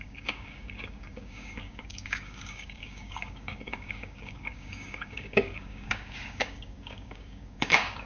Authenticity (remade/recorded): remade